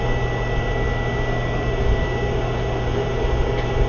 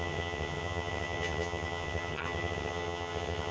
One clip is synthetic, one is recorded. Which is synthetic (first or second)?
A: second